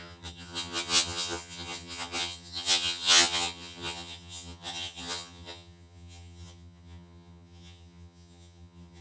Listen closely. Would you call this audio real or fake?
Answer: fake